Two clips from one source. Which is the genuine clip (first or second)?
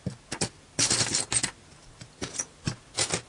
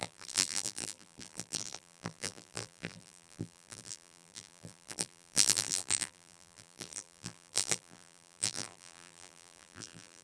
first